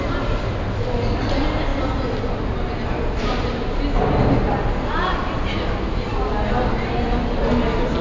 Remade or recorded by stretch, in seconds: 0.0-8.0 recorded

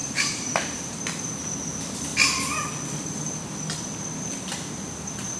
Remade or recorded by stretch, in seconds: 0.0-1.0 remade; 1.0-5.4 recorded